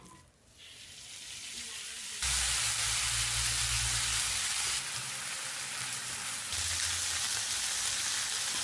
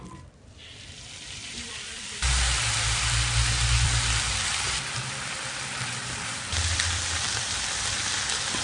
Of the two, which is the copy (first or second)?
second